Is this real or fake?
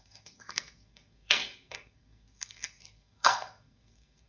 fake